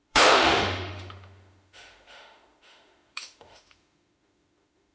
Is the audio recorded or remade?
remade